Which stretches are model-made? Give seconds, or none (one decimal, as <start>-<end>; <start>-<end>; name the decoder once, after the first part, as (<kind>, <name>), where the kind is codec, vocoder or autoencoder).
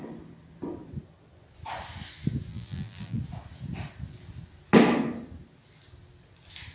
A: 2.5-3.2 (vocoder, BigVGAN v2)